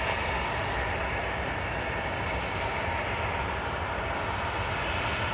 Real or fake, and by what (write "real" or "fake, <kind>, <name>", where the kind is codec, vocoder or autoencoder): real